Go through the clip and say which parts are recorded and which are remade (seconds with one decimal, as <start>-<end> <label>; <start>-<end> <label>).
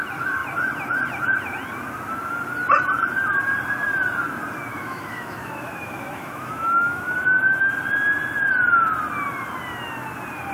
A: 0.0-4.7 recorded; 4.7-7.7 remade; 7.7-10.5 recorded